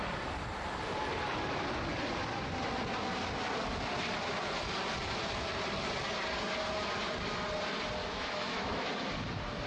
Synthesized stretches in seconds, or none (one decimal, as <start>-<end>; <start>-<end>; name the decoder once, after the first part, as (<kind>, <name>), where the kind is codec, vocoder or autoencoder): 8.0-8.9 (autoencoder, DAC-VAE)